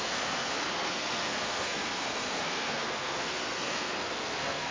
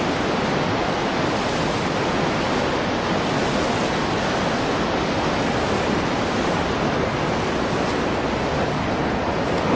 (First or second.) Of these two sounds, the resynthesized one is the first